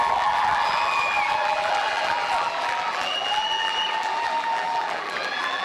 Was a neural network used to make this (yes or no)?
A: yes